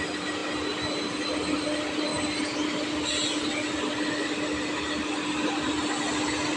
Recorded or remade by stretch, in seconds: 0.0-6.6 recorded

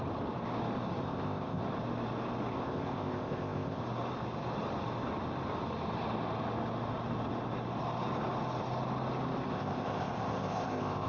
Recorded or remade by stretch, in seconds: 0.0-1.0 recorded; 1.0-1.6 remade; 1.6-2.5 recorded; 2.5-3.8 remade; 3.8-9.5 recorded; 9.5-11.1 remade

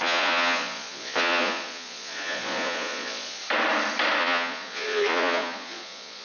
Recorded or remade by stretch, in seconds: 0.0-3.4 remade; 3.4-4.2 recorded; 4.2-6.2 remade

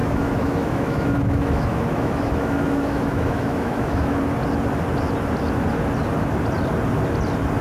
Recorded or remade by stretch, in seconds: 0.0-4.2 remade; 4.2-7.6 recorded